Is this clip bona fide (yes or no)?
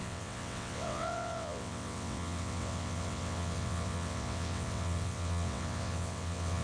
no